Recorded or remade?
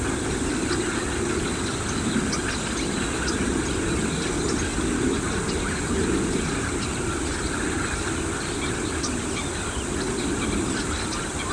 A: recorded